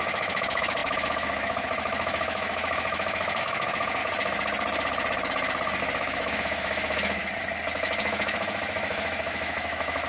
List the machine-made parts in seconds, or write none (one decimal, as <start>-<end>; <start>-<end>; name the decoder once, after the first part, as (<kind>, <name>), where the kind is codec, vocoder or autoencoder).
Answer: 0.0-4.0 (autoencoder, DAC-VAE); 5.8-7.2; 8.0-10.1

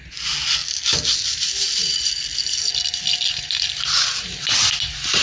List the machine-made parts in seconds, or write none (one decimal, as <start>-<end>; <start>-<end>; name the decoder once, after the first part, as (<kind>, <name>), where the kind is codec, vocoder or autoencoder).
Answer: none

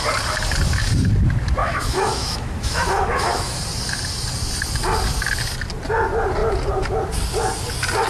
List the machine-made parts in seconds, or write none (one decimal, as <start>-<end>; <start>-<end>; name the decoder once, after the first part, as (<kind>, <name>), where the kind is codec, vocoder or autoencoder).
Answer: 1.6-3.6 (autoencoder, DAC-VAE)

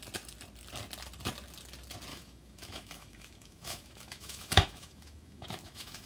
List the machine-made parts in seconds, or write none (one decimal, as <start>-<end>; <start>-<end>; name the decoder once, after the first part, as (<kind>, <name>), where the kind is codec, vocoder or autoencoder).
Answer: 2.1-6.1 (autoencoder, DAC-VAE)

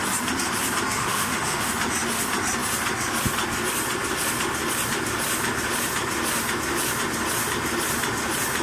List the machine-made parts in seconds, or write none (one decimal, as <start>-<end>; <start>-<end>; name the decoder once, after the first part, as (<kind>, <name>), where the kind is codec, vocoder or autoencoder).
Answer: 1.0-1.7 (autoencoder, DAC-VAE)

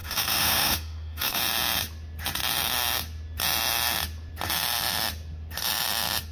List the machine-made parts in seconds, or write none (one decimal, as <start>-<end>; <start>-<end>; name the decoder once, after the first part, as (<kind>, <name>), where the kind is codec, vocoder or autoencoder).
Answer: 0.0-1.4 (autoencoder, DAC-VAE)

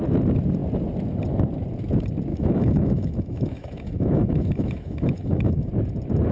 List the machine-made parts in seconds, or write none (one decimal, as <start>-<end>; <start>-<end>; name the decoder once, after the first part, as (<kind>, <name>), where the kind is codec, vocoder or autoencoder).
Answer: 2.3-5.7 (autoencoder, DAC-VAE)